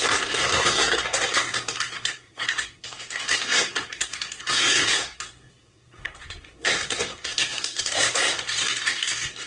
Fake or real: fake